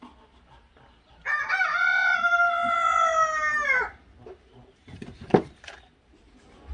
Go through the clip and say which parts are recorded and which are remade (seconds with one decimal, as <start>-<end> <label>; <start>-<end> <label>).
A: 0.0-3.5 recorded; 3.5-5.8 remade; 5.8-6.7 recorded